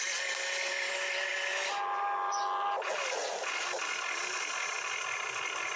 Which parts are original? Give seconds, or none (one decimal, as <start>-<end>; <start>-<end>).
0.0-5.8